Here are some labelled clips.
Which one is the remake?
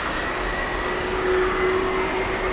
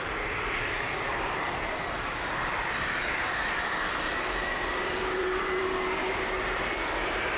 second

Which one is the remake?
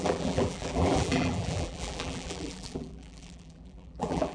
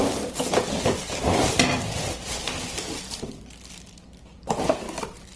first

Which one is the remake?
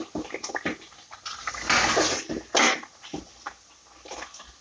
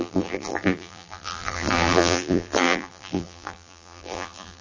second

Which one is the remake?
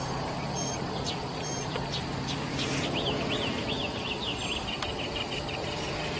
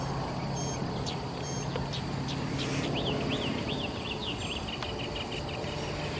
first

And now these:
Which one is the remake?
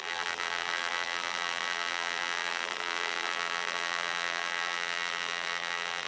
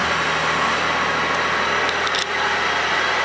first